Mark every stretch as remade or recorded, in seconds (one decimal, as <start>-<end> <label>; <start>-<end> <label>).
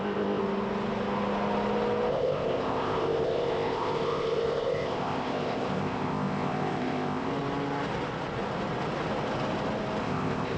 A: 0.0-0.4 remade; 0.4-2.1 recorded; 2.1-7.3 remade; 7.3-10.0 recorded; 10.0-10.6 remade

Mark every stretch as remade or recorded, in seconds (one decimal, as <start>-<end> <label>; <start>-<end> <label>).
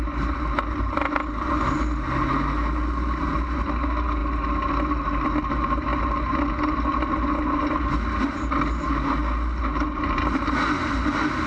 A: 0.0-11.5 recorded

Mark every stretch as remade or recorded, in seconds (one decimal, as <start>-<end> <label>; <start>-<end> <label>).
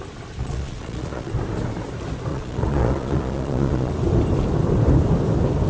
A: 0.0-0.4 recorded; 0.4-1.3 remade; 1.3-2.3 recorded; 2.3-3.9 remade; 3.9-5.7 recorded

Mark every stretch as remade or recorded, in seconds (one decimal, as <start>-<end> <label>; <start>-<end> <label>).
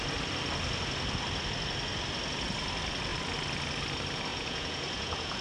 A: 0.0-4.3 recorded; 4.3-5.4 remade